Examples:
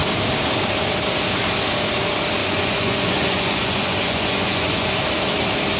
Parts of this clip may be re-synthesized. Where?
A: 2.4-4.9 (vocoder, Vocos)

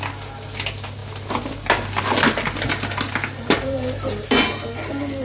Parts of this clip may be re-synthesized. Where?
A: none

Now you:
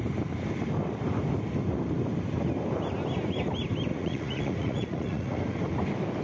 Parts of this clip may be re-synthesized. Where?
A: 3.9-5.4 (vocoder, Vocos)

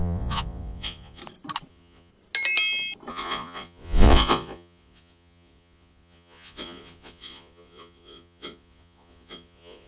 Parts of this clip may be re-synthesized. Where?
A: 0.0-1.2 (vocoder, Vocos); 1.7-2.1; 3.1-9.9

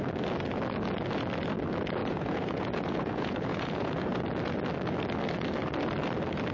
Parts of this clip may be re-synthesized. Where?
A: 2.0-4.2 (vocoder, Vocos)

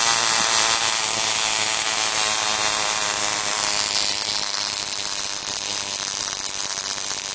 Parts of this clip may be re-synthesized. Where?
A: none